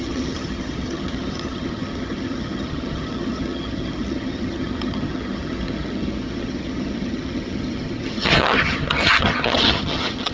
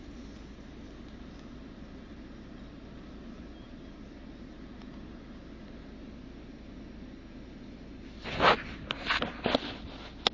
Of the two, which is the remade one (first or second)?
first